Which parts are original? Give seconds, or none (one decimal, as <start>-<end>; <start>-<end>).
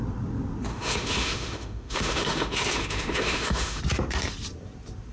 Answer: 0.0-0.7; 3.8-5.1